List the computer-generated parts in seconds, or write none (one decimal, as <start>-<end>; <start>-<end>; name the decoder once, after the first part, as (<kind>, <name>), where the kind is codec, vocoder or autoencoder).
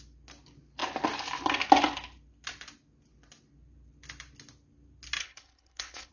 5.2-6.1 (codec, HILCodec)